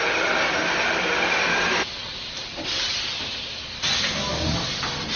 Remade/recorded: recorded